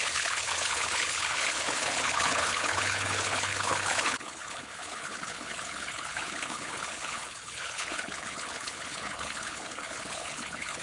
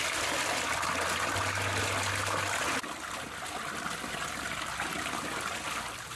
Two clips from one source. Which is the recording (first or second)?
second